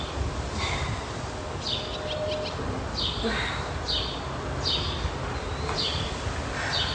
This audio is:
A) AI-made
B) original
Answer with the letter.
B